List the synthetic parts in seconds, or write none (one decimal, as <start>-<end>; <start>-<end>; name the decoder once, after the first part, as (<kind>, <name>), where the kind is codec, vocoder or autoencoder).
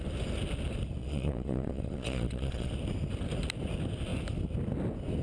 1.0-2.7 (vocoder, Vocos)